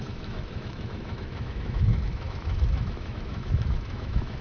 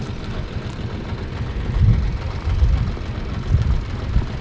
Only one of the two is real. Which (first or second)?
second